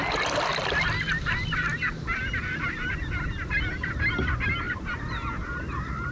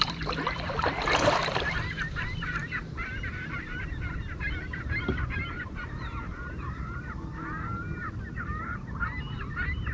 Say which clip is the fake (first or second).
second